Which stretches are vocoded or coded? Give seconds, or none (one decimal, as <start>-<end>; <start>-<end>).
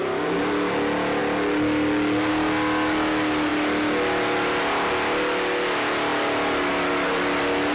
none